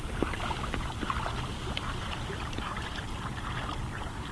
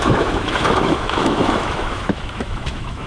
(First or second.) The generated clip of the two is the second